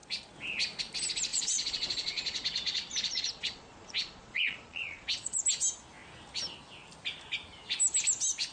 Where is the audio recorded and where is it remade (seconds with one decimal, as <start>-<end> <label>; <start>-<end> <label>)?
0.0-1.3 recorded; 1.3-5.4 remade; 5.4-8.5 recorded